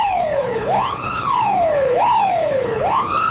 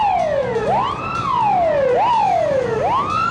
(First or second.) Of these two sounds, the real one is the second